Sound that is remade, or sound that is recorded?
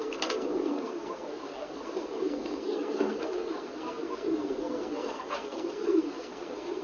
remade